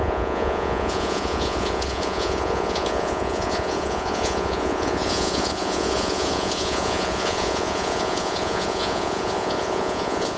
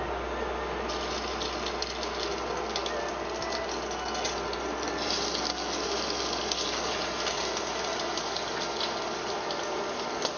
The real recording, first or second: second